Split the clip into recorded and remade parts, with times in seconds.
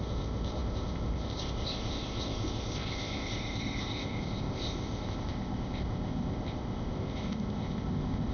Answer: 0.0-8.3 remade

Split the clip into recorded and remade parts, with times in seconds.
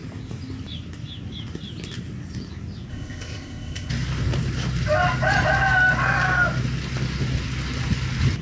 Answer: 0.0-2.9 recorded; 2.9-3.9 remade; 3.9-8.4 recorded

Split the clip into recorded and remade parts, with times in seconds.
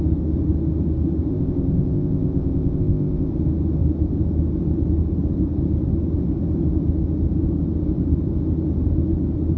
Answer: 0.0-1.3 recorded; 1.3-3.3 remade; 3.3-9.6 recorded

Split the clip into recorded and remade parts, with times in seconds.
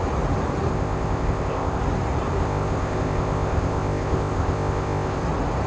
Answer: 0.0-0.7 recorded; 0.7-1.8 remade; 1.8-2.4 recorded; 2.4-5.2 remade; 5.2-5.7 recorded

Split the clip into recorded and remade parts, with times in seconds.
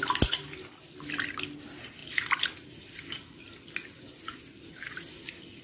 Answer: 0.0-5.6 recorded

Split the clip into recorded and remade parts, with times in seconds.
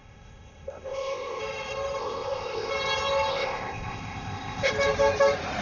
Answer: 0.0-1.4 remade; 1.4-2.0 recorded; 2.0-2.7 remade; 2.7-3.3 recorded; 3.3-4.7 remade; 4.7-5.6 recorded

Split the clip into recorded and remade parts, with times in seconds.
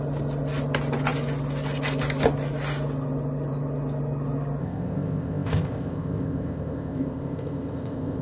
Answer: 0.0-4.6 recorded; 4.6-8.2 remade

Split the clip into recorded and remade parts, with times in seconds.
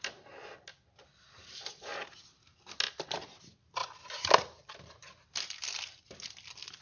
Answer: 0.0-6.8 recorded